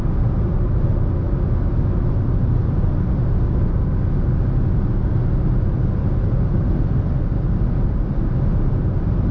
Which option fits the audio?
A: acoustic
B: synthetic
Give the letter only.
A